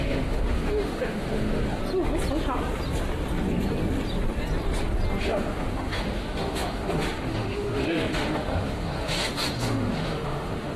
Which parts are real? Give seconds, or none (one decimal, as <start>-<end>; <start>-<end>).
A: 1.8-5.2